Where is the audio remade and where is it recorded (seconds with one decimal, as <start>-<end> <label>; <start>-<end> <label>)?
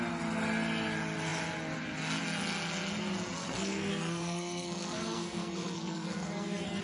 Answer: 0.0-3.4 recorded; 3.4-6.8 remade